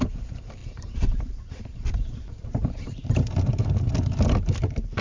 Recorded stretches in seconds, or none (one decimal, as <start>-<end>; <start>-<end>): 0.0-0.6; 3.2-5.0